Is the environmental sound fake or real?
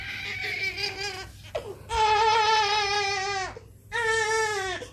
real